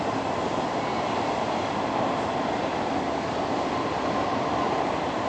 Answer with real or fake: real